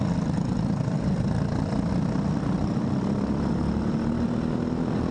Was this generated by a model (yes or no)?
no